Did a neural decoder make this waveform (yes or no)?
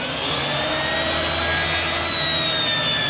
no